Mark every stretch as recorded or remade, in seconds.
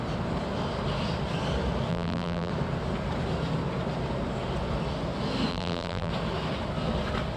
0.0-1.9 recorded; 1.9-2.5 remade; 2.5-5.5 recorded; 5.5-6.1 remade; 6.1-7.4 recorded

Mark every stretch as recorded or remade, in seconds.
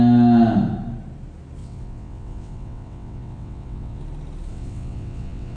0.0-1.6 recorded; 1.6-4.0 remade; 4.0-4.5 recorded; 4.5-5.6 remade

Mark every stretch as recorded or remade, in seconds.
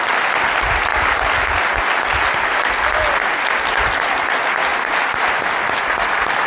0.0-6.5 recorded